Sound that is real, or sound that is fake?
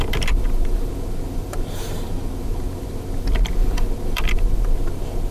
fake